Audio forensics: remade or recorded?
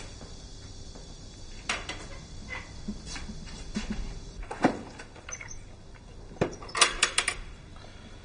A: recorded